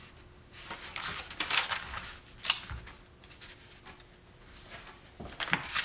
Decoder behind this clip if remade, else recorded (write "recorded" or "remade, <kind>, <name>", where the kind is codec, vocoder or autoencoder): recorded